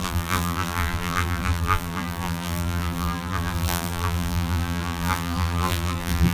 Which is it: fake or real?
fake